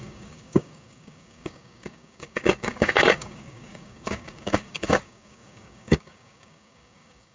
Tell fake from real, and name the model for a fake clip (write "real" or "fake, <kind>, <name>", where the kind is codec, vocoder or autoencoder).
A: fake, codec, DAC